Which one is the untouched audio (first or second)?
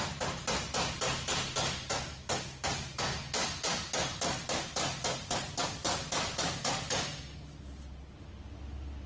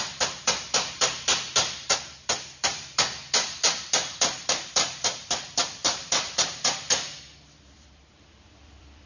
first